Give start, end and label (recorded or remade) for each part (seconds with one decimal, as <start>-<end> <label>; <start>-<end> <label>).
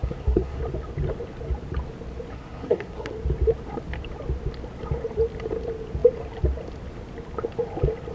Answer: 0.0-0.6 remade; 0.6-2.3 recorded; 2.3-3.1 remade; 3.1-8.1 recorded